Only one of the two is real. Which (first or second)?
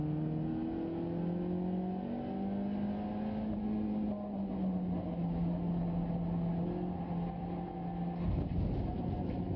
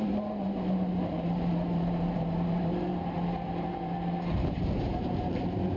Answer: first